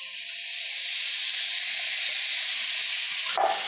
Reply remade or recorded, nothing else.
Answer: recorded